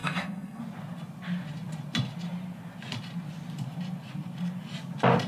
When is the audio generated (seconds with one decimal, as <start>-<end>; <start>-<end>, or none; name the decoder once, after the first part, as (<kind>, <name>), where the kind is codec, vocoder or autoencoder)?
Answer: 0.0-0.6 (codec, SNAC)

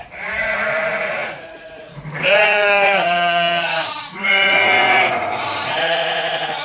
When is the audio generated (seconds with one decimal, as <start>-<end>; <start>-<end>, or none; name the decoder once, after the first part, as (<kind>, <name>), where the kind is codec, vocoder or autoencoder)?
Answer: 0.0-6.6 (vocoder, Vocos)

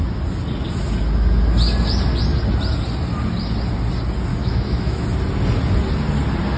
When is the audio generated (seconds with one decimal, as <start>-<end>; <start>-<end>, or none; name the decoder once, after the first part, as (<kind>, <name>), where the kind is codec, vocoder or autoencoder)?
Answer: 4.3-5.0 (autoencoder, DAC-VAE)